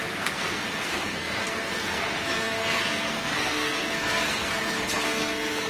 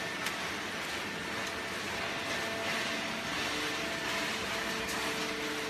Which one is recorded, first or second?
second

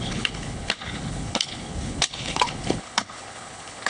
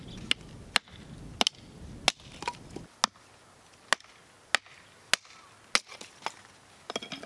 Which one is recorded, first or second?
second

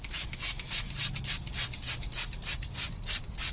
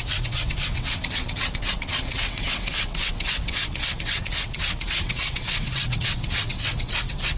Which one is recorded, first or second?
first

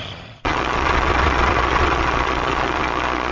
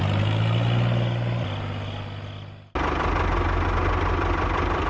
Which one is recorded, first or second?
second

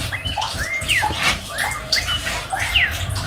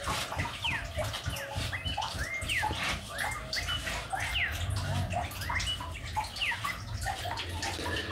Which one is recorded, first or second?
second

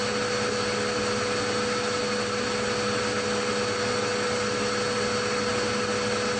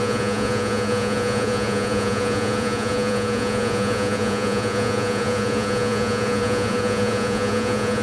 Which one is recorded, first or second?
first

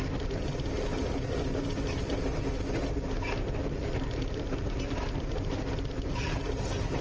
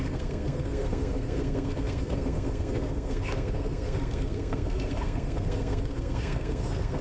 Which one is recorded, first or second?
first